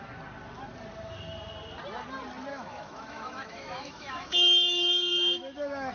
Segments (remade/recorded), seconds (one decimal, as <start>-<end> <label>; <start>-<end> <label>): 0.0-2.5 recorded; 2.5-5.9 remade

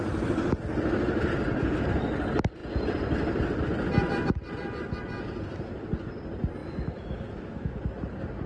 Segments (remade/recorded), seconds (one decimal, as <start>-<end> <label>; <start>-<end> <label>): 0.0-6.6 recorded; 6.6-7.8 remade; 7.8-8.5 recorded